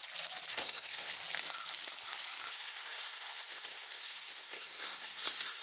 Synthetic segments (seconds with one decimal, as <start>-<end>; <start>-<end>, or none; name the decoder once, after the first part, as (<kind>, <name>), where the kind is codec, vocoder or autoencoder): 0.5-1.2 (codec, SNAC); 2.5-5.6